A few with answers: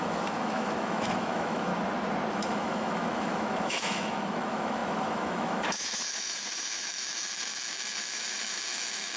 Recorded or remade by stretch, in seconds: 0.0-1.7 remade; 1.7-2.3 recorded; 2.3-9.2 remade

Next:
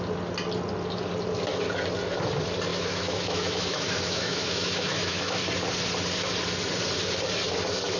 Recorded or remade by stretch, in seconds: 0.0-2.7 recorded; 2.7-5.4 remade; 5.4-8.0 recorded

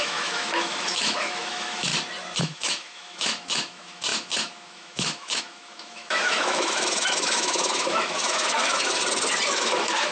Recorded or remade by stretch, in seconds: 0.0-1.9 remade; 1.9-2.4 recorded; 2.4-9.0 remade; 9.0-9.5 recorded; 9.5-10.1 remade